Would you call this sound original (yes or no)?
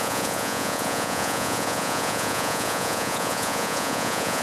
no